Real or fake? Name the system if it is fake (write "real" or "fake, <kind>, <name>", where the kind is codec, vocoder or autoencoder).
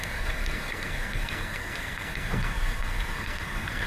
fake, codec, SNAC